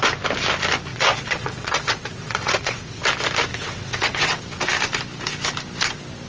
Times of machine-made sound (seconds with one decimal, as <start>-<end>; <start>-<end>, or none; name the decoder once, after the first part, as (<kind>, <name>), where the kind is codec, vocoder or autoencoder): 0.9-3.0 (vocoder, WaveNeXt); 3.5-4.4